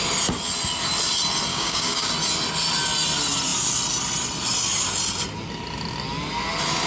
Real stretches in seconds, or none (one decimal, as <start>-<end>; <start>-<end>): 0.0-1.5; 2.1-6.9